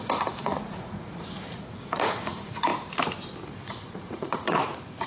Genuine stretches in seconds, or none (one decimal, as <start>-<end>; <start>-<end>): 2.7-3.5